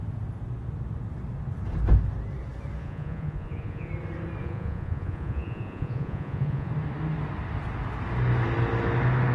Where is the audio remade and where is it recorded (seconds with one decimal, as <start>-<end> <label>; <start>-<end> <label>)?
0.0-2.8 recorded; 2.8-3.9 remade; 3.9-4.4 recorded; 4.4-6.7 remade; 6.7-9.3 recorded